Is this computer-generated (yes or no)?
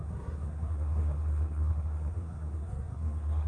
yes